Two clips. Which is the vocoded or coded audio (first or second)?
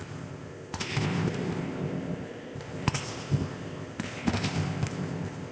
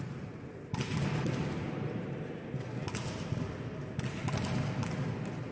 first